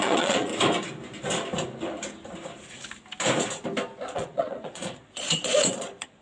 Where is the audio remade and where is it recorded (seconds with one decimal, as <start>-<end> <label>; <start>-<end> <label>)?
0.0-0.5 remade; 0.5-4.0 recorded; 4.0-6.2 remade